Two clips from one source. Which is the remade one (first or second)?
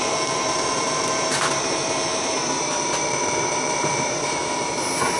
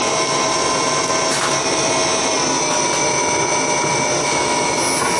first